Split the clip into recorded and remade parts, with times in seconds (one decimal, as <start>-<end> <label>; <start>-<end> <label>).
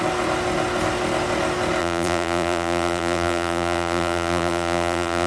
0.0-1.8 recorded; 1.8-5.3 remade